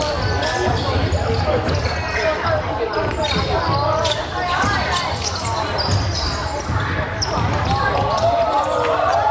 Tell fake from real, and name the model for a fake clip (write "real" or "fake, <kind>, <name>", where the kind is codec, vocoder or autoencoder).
real